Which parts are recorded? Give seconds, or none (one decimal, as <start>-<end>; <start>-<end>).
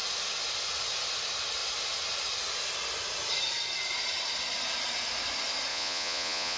0.0-5.7